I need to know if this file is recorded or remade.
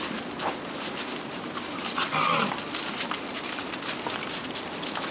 recorded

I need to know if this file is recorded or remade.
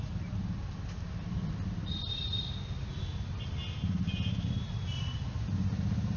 recorded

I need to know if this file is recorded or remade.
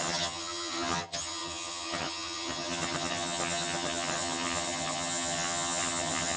remade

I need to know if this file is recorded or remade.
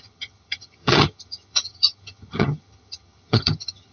remade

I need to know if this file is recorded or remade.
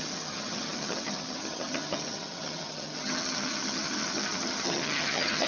remade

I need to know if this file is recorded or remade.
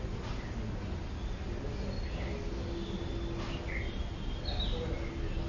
recorded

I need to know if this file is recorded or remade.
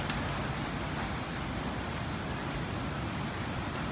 recorded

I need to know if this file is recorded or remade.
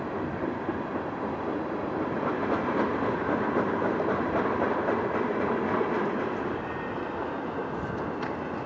recorded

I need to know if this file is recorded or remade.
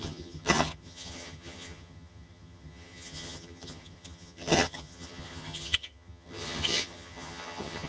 remade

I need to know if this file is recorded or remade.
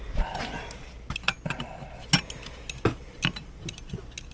recorded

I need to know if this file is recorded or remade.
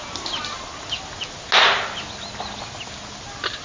recorded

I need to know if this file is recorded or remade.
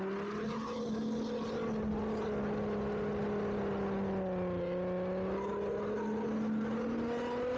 recorded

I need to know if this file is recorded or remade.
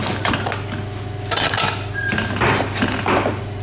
recorded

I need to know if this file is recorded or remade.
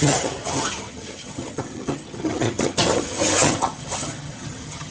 remade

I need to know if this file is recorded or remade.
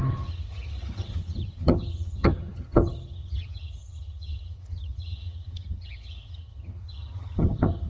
remade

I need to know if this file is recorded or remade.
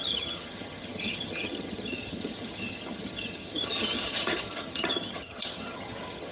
remade